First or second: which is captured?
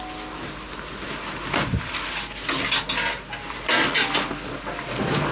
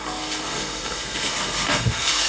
first